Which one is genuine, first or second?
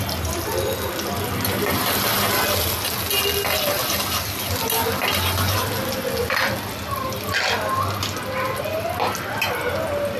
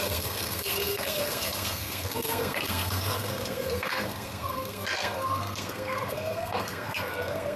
first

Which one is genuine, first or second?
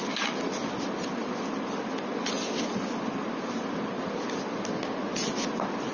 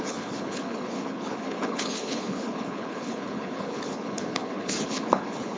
first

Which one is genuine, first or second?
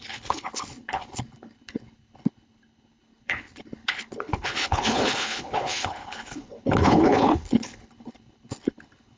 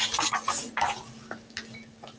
second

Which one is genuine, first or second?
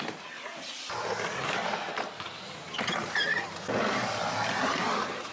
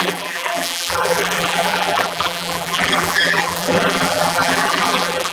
first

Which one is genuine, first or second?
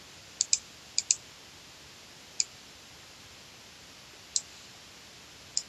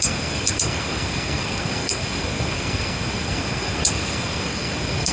first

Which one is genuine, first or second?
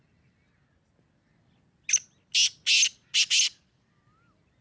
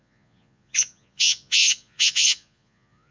first